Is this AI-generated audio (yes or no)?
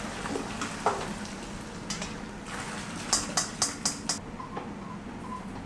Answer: no